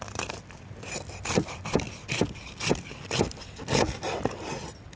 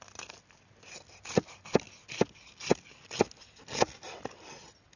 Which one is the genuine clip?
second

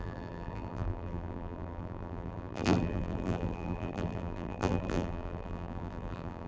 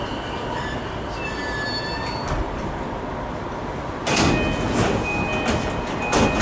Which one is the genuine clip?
second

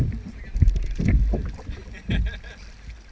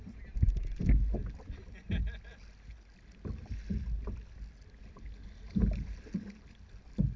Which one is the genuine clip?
second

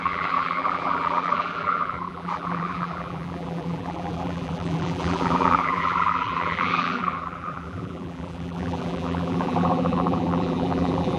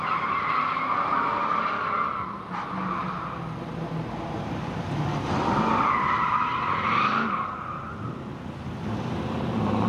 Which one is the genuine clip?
second